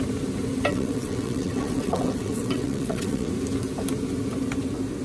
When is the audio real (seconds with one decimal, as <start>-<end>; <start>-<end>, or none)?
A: 0.0-0.7; 3.3-5.0